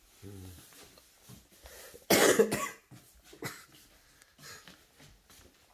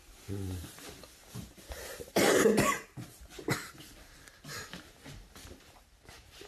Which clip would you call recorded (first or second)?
first